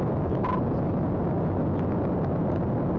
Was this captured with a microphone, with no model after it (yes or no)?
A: yes